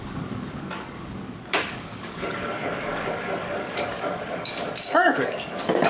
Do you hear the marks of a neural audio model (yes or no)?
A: yes